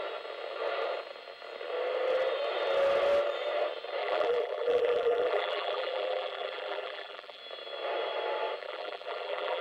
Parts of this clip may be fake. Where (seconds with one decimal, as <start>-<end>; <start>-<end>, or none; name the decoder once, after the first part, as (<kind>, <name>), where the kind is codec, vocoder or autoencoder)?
4.0-7.4 (vocoder, BigVGAN v2); 8.6-9.6